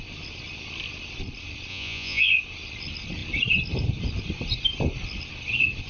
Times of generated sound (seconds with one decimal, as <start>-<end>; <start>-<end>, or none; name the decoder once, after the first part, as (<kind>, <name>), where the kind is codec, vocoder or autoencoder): 1.7-2.3 (vocoder, Vocos)